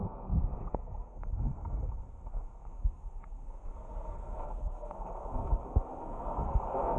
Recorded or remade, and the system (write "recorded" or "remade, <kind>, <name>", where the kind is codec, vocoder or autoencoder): remade, codec, SNAC